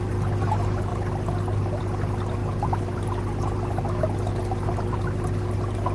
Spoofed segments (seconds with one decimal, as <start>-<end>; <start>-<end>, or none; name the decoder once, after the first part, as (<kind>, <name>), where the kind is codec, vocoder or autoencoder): none